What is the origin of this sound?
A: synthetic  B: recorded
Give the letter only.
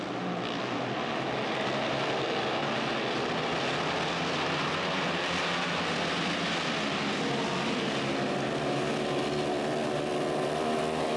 B